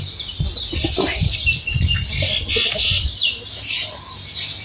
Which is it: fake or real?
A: real